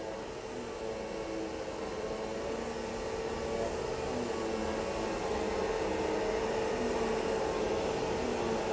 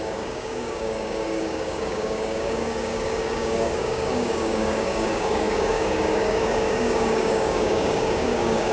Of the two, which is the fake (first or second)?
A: second